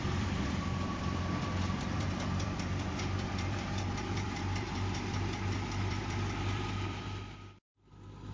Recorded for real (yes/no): no